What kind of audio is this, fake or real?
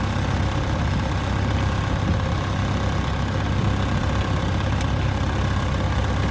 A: real